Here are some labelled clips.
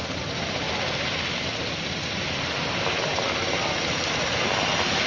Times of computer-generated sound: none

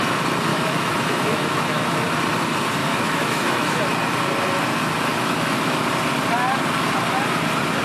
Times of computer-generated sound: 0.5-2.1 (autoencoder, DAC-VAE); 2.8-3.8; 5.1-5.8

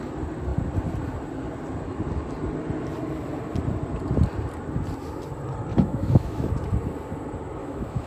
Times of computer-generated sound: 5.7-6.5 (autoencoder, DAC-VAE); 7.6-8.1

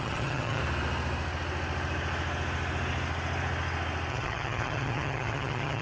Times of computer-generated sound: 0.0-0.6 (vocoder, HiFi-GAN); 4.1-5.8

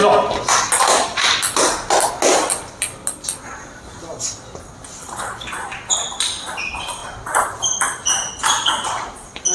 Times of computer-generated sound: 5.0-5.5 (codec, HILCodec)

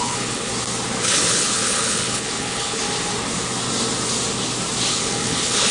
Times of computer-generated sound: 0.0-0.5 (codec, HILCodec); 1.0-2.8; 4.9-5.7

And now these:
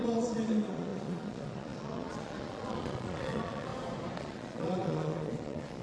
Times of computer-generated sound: 0.0-3.7 (vocoder, Vocos); 4.2-5.8

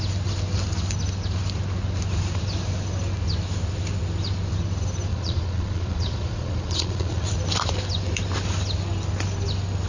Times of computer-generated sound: 5.1-7.3 (vocoder, Vocos)